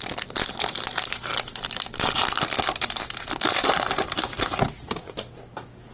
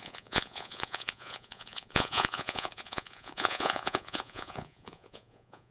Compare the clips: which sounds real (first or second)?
first